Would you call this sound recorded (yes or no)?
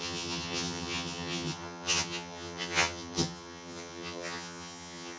no